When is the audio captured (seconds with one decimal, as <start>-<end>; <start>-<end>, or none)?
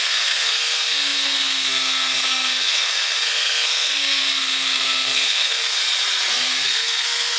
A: 5.8-6.3